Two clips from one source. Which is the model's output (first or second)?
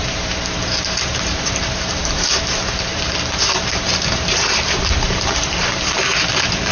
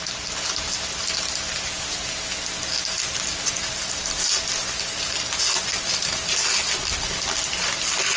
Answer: first